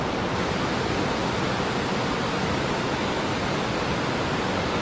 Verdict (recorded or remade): recorded